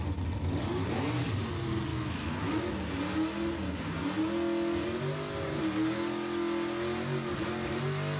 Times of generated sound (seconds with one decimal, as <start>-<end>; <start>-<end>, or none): 1.9-2.7